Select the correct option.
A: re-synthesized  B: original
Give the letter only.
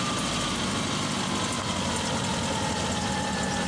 B